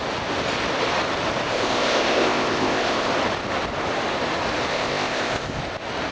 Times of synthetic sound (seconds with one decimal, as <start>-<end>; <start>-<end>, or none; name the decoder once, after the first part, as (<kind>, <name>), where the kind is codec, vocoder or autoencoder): 1.5-3.1 (codec, ZipCodec); 4.7-5.6